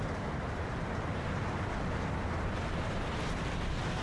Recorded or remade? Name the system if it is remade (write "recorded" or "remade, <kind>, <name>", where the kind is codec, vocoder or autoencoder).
recorded